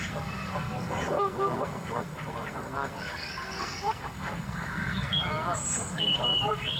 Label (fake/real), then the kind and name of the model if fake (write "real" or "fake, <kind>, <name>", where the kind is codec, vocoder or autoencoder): fake, codec, SNAC